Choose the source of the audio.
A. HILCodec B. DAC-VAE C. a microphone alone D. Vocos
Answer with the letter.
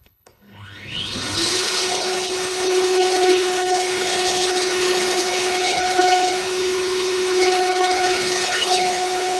A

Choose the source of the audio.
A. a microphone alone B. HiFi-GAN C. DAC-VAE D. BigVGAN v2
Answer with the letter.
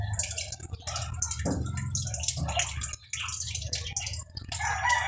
A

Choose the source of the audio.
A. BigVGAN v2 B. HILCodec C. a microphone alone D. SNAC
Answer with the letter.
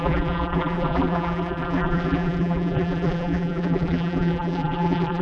A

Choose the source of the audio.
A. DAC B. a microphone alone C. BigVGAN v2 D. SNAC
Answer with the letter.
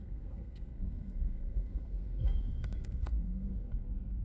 D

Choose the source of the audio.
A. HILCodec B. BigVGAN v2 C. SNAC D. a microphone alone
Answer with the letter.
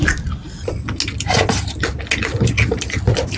D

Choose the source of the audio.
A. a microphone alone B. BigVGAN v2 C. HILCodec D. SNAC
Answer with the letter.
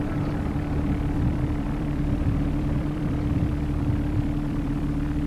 B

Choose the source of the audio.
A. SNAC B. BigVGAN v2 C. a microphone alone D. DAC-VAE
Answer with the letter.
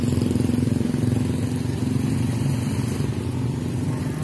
C